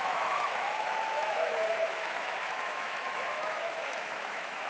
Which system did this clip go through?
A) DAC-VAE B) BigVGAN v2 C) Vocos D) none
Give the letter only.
A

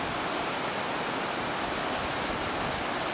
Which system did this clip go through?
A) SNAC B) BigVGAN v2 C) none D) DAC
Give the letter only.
C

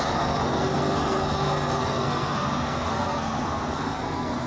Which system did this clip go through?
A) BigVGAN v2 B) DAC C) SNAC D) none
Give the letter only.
C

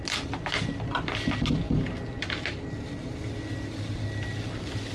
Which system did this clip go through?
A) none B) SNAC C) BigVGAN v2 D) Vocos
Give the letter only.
A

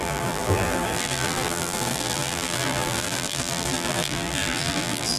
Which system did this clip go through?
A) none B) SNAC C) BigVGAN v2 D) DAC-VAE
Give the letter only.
C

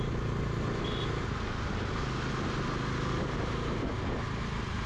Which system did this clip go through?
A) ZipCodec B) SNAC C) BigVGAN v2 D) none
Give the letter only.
D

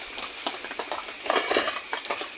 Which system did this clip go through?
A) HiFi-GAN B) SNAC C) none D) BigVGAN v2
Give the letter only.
C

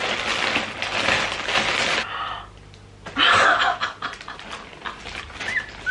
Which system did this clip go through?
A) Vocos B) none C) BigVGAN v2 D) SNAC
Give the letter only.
B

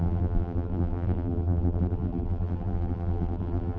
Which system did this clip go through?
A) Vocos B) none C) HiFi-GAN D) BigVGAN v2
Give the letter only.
D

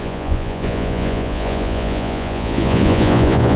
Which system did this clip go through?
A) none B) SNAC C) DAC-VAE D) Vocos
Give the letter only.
D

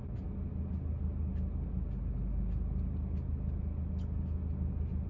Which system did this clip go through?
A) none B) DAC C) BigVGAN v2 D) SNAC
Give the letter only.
A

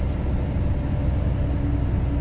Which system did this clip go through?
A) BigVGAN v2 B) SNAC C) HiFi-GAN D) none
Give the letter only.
D